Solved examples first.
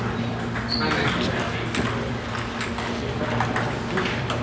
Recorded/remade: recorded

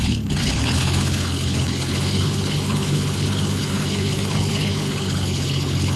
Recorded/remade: remade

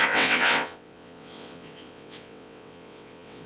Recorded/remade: remade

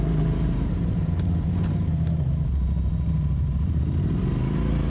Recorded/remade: remade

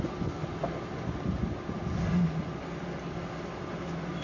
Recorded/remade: recorded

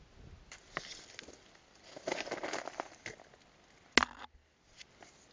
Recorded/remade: recorded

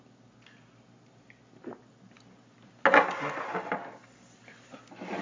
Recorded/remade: recorded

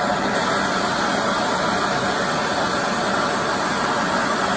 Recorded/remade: recorded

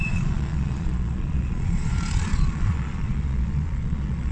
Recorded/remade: remade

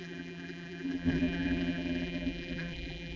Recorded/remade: remade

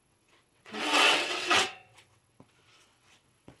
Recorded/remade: remade